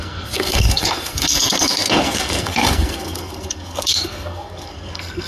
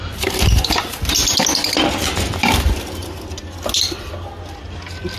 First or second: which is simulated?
first